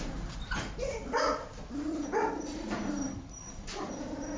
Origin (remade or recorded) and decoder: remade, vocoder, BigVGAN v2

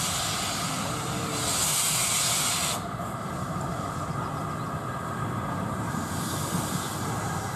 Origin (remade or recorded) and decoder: remade, vocoder, BigVGAN v2